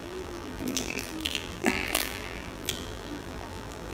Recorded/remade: remade